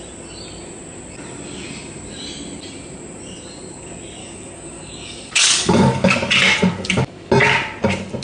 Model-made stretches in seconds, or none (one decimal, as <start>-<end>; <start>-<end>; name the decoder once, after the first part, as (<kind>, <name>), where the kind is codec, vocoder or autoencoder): 4.2-6.3 (codec, DAC); 6.7-7.3